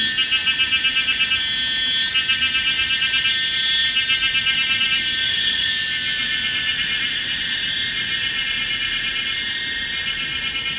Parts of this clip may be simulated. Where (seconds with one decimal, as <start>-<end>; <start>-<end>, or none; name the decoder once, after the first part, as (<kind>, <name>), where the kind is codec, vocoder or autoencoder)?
5.2-5.7 (codec, DAC)